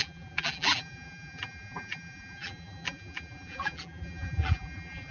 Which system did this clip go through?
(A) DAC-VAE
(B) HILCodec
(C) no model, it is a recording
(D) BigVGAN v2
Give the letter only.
D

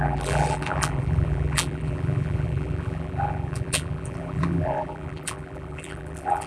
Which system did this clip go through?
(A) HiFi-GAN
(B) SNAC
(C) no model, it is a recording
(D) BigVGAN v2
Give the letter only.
D